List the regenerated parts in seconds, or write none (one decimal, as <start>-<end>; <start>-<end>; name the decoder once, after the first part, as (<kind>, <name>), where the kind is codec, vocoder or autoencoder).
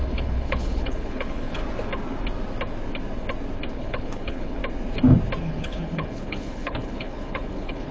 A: 0.0-1.6 (codec, HILCodec); 3.7-4.6; 5.4-7.9